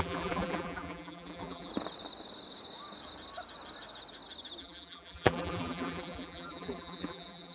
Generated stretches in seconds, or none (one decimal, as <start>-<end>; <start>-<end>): 0.0-1.7; 4.6-7.5